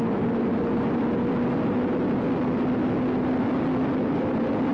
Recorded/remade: recorded